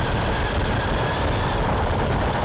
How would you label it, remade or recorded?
recorded